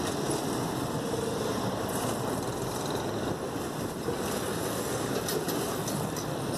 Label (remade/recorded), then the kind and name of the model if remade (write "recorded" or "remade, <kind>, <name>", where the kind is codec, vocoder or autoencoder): recorded